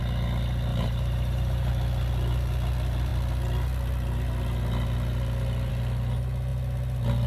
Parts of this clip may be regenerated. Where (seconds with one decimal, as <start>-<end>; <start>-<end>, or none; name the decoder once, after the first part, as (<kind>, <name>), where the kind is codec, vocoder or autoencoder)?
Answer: 0.7-1.7 (vocoder, BigVGAN v2)